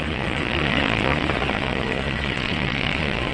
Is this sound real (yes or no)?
no